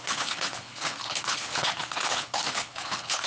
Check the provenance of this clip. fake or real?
fake